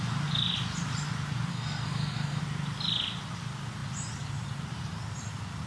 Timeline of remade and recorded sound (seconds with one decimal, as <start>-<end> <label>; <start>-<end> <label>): 0.0-1.5 recorded; 1.5-2.4 remade; 2.4-5.7 recorded